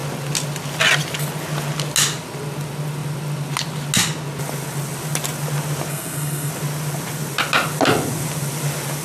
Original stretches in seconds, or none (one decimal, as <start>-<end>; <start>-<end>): 0.0-5.9; 6.5-9.0